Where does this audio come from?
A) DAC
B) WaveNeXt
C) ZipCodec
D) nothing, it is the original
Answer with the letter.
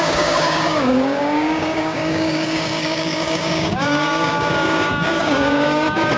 A